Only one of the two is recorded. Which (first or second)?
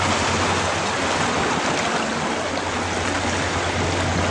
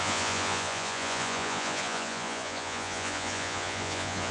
first